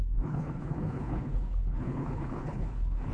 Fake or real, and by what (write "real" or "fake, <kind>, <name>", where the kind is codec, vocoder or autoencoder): fake, codec, HILCodec